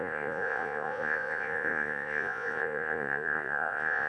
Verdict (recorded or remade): remade